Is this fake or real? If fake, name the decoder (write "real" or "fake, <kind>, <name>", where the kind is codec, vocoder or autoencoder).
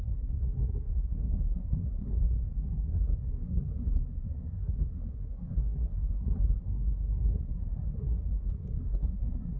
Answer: fake, codec, SNAC